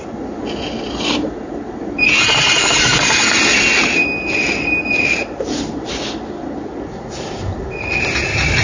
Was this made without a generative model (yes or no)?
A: no